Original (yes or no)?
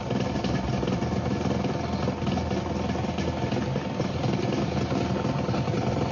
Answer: yes